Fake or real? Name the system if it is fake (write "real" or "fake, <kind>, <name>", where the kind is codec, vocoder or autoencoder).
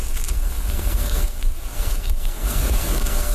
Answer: fake, codec, SNAC